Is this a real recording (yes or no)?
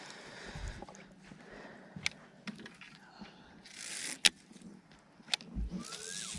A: yes